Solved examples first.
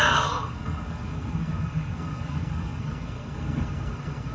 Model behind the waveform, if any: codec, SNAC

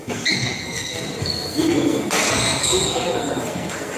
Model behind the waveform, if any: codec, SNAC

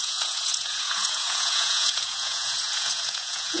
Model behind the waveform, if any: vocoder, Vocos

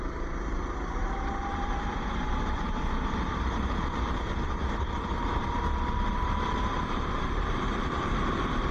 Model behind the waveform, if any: vocoder, BigVGAN v2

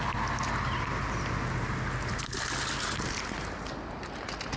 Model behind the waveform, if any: none